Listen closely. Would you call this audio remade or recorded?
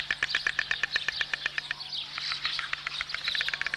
recorded